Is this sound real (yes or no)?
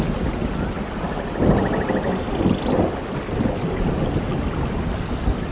yes